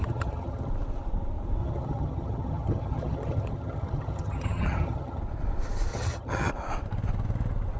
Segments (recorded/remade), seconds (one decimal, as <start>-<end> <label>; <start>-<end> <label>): 0.0-0.7 remade; 0.7-1.6 recorded; 1.6-5.2 remade; 5.2-5.9 recorded; 5.9-6.5 remade; 6.5-7.8 recorded